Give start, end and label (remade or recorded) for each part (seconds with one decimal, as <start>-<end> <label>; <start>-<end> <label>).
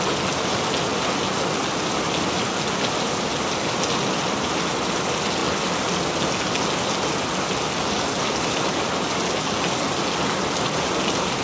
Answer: 0.0-11.4 recorded